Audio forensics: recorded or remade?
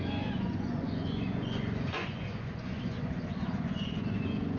remade